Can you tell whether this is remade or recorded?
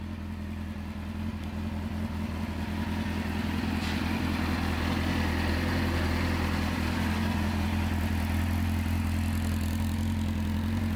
recorded